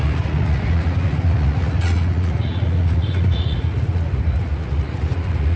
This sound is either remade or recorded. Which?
remade